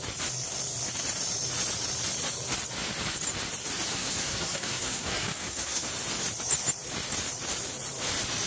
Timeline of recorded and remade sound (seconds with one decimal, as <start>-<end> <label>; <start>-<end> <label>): 0.0-3.9 recorded; 3.9-5.9 remade; 5.9-8.5 recorded

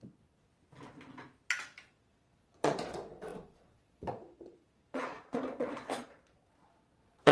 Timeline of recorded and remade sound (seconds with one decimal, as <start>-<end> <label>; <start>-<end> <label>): 0.0-0.5 remade; 0.5-1.9 recorded; 1.9-7.3 remade